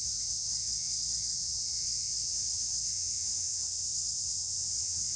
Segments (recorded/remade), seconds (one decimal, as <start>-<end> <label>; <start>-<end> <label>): 0.0-5.2 remade